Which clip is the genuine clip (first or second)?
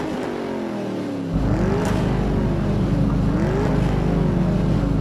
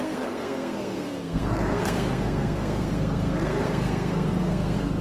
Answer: first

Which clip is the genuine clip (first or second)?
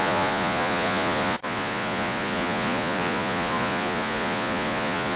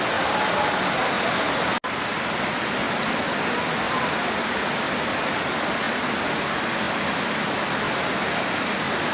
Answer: second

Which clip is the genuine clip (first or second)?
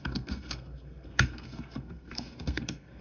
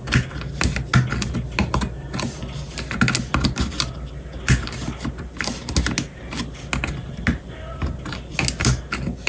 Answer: second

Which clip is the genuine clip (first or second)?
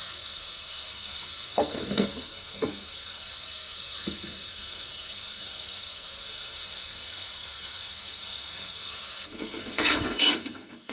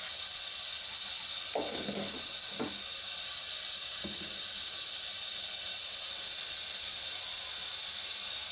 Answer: second